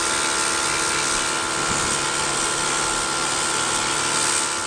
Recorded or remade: recorded